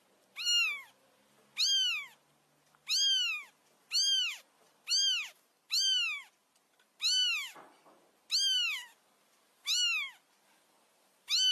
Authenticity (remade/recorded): recorded